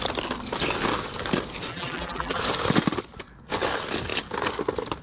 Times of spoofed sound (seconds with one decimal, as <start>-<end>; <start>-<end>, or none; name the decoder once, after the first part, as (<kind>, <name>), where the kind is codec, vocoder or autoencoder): 1.7-2.4 (vocoder, BigVGAN v2)